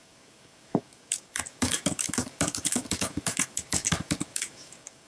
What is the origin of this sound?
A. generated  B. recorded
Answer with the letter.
A